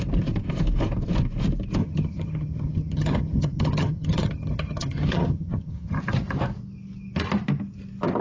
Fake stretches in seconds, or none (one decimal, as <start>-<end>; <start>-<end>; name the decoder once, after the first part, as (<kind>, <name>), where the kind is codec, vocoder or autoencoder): 1.8-6.0 (vocoder, HiFi-GAN)